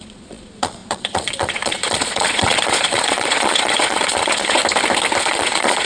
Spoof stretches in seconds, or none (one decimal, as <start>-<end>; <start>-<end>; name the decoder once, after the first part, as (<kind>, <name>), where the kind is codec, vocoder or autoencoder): 0.0-4.6 (vocoder, Vocos); 5.2-5.8